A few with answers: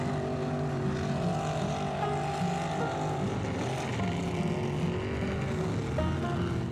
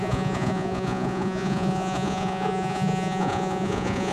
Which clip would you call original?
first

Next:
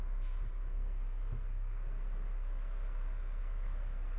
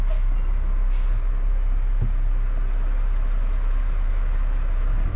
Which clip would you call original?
second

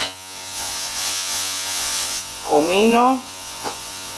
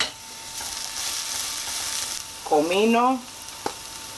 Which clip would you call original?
second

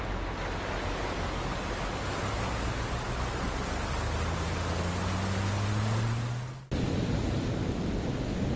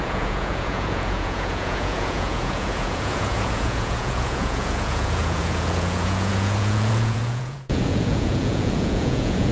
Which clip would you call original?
first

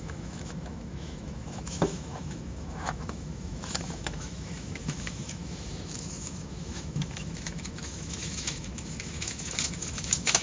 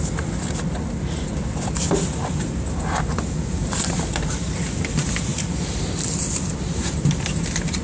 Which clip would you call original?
second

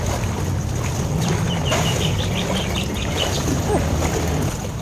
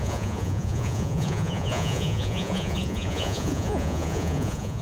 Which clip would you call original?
first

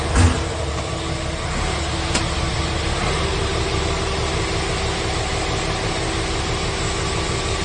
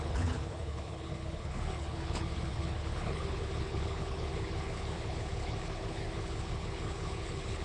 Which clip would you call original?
first